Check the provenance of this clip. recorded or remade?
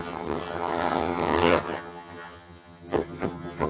remade